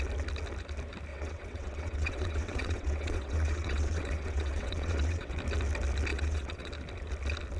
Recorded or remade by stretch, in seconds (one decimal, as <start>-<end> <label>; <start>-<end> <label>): 0.0-1.1 recorded; 1.1-5.4 remade; 5.4-6.1 recorded; 6.1-6.7 remade; 6.7-7.6 recorded